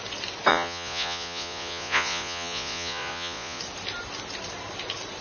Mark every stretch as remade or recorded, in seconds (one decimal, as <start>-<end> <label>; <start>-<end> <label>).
0.0-0.5 recorded; 0.5-3.6 remade; 3.6-5.2 recorded